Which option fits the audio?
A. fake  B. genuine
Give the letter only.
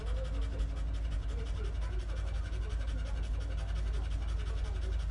B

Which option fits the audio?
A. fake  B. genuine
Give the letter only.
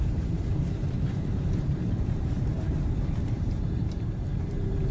A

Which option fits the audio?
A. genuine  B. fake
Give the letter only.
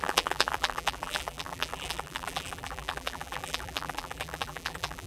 B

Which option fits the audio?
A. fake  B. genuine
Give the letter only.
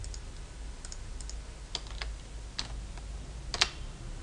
B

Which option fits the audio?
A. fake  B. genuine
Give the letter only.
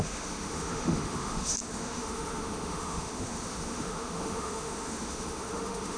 A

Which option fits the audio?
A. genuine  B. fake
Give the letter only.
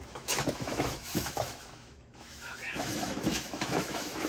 B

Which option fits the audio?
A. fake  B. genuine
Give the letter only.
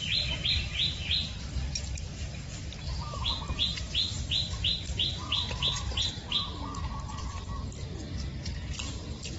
B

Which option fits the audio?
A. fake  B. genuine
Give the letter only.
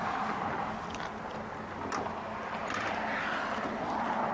B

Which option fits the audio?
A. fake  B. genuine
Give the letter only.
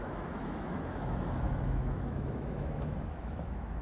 A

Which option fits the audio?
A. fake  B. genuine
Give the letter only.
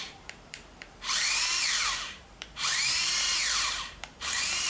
A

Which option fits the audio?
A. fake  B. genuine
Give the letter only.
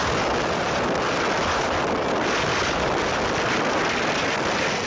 B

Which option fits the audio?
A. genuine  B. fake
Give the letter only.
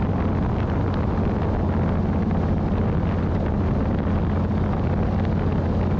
A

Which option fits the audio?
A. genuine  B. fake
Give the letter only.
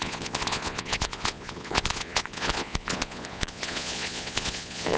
B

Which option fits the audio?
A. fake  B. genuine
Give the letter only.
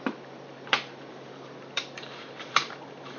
A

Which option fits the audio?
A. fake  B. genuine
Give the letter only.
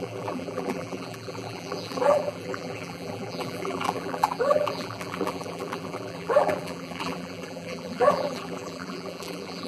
A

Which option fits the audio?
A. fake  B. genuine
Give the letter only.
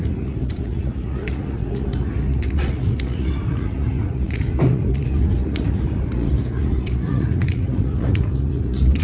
A